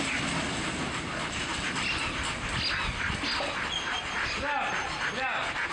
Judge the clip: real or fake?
real